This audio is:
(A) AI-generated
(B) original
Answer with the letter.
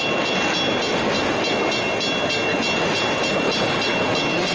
B